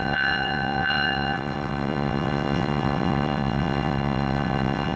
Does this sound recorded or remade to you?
remade